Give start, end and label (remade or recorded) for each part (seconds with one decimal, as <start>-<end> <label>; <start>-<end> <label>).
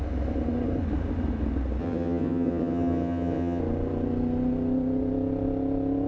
0.0-1.8 recorded; 1.8-3.6 remade; 3.6-6.1 recorded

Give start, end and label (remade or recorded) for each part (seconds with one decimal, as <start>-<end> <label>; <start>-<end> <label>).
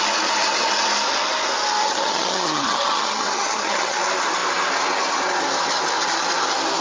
0.0-1.8 recorded; 1.8-4.0 remade; 4.0-6.8 recorded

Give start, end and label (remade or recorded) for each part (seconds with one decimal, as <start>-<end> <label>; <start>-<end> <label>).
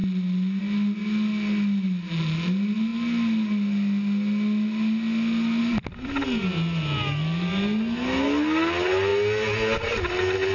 0.0-10.5 recorded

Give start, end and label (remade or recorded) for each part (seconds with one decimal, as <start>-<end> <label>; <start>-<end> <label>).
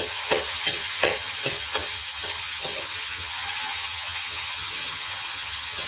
0.0-5.9 remade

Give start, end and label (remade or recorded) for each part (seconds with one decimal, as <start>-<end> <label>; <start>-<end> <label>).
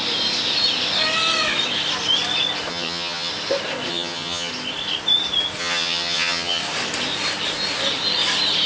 0.0-2.7 recorded; 2.7-3.3 remade; 3.3-3.9 recorded; 3.9-4.5 remade; 4.5-5.6 recorded; 5.6-6.6 remade; 6.6-8.7 recorded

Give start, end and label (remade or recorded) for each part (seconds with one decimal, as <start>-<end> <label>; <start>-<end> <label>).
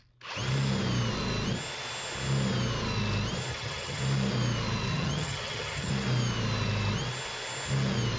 0.0-3.5 recorded; 3.5-4.0 remade; 4.0-4.9 recorded; 4.9-5.9 remade; 5.9-8.2 recorded